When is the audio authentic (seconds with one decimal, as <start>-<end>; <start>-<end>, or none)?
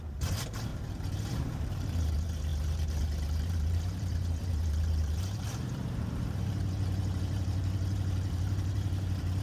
0.7-1.3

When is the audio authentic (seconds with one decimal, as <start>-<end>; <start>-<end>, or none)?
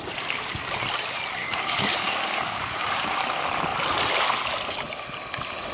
0.0-1.4; 3.1-5.7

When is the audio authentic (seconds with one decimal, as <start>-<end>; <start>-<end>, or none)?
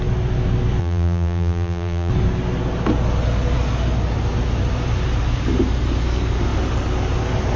0.0-0.8; 2.1-7.6